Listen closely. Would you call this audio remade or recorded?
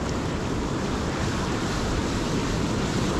remade